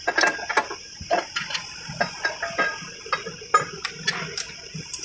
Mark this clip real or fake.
real